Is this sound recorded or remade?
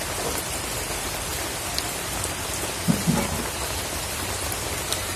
recorded